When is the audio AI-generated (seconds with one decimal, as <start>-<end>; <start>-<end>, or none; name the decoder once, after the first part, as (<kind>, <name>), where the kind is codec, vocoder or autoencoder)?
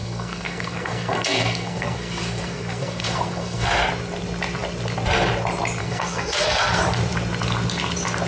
0.0-3.7 (codec, SNAC); 5.8-6.8